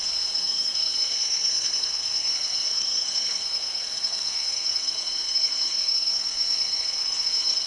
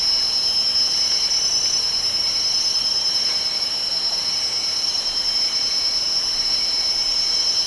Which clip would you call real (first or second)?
second